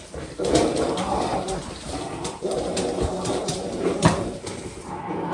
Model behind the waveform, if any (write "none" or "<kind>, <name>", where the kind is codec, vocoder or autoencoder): vocoder, BigVGAN v2